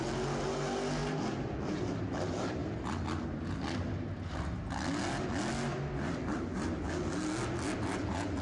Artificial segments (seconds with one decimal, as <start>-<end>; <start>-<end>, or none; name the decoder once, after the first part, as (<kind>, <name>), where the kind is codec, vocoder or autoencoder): none